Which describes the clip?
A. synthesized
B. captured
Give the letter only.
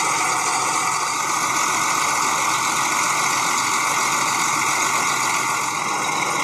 B